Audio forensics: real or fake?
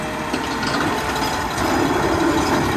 real